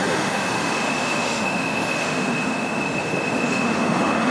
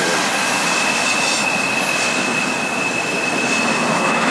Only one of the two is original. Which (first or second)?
second